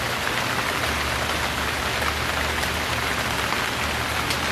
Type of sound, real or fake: real